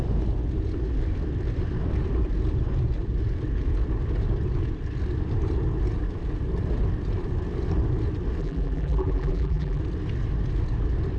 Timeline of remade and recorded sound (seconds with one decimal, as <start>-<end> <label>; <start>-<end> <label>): 0.0-8.4 recorded; 8.4-9.8 remade; 9.8-11.2 recorded